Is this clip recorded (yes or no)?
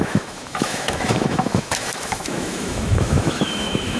no